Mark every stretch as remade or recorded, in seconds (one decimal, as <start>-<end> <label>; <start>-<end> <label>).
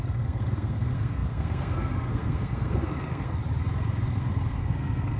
0.0-3.4 remade; 3.4-3.9 recorded; 3.9-5.2 remade